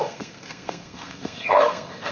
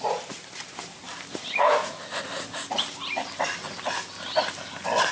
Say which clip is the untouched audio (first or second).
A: second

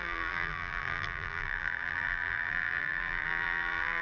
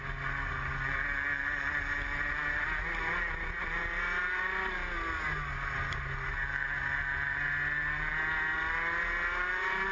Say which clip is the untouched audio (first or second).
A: second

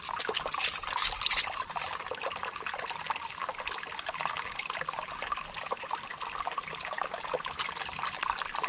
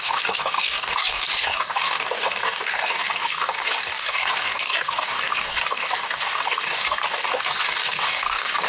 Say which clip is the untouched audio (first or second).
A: first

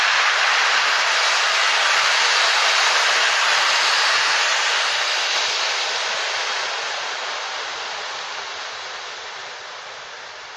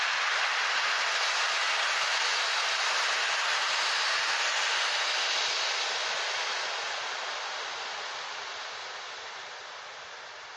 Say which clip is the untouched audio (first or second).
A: second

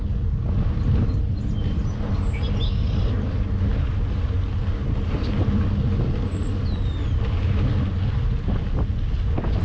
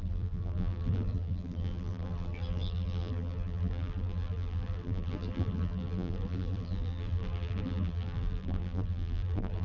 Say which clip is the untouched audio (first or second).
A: first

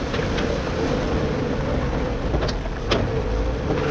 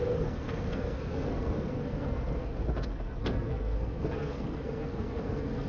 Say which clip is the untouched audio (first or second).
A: first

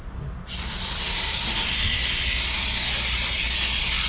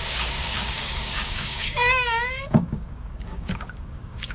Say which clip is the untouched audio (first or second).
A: first